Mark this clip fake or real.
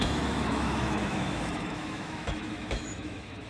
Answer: fake